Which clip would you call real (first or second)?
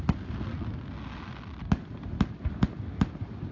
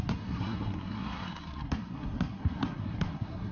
first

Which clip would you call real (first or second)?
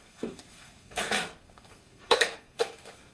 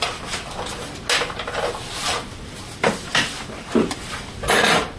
second